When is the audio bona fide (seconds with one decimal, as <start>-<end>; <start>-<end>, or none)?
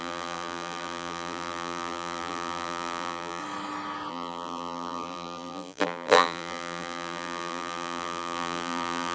3.4-4.1